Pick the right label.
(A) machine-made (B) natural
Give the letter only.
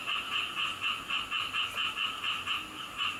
B